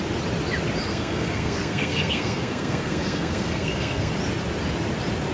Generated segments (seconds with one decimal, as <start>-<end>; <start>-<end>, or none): 0.9-4.1